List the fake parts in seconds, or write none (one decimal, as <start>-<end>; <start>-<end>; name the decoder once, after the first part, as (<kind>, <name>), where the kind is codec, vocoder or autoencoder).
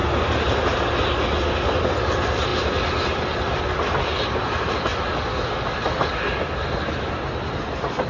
none